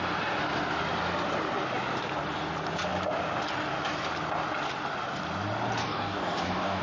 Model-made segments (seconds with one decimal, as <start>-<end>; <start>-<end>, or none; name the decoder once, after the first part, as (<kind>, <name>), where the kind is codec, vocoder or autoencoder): 5.8-6.8 (codec, DAC)